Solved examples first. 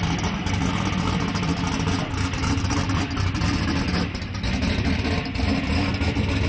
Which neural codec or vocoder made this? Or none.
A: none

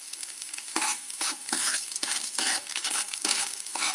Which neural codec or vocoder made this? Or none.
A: codec, DAC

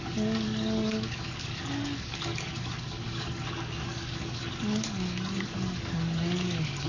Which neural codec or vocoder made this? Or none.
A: codec, DAC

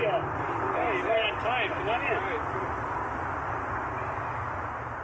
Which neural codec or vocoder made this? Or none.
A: none